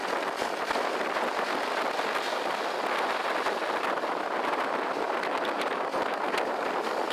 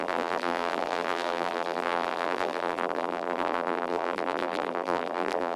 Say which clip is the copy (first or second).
second